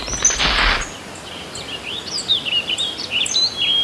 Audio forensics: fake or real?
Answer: real